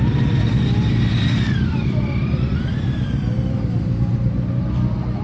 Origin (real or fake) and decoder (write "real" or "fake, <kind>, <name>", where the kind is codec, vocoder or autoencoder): real